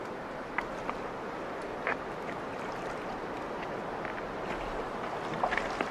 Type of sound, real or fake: real